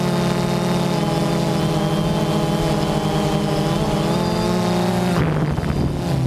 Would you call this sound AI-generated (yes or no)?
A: no